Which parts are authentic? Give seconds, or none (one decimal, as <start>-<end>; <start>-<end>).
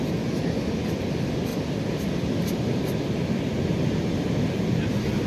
0.0-5.3